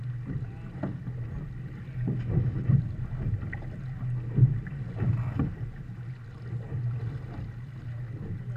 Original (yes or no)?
yes